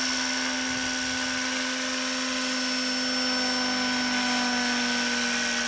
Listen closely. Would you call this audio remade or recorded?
recorded